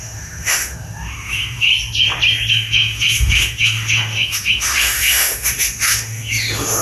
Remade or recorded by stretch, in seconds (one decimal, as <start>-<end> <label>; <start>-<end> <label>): 0.0-1.7 remade; 1.7-2.5 recorded; 2.5-6.8 remade